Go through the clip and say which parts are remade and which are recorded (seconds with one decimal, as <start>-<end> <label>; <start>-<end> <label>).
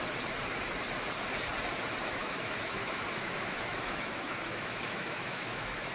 0.0-2.2 recorded; 2.2-5.9 remade